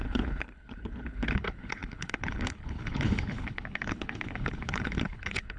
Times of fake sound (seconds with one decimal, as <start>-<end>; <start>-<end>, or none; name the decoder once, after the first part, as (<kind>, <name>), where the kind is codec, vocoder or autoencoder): 0.0-5.6 (codec, HILCodec)